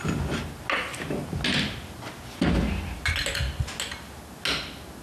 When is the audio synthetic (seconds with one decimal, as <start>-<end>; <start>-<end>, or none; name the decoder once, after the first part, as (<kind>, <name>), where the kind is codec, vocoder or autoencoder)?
none